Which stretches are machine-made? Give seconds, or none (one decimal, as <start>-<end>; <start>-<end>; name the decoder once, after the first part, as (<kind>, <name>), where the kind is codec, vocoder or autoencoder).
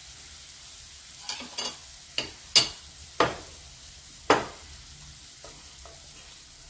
none